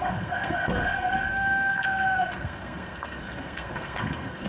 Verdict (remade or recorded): remade